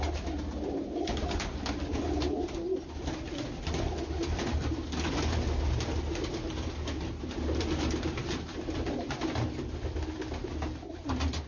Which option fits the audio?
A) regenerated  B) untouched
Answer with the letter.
B